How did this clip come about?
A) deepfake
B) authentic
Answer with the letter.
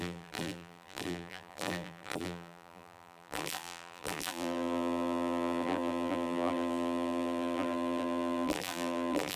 A